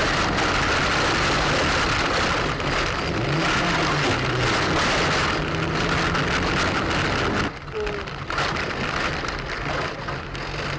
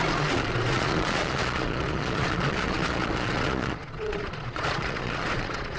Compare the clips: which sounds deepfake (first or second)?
second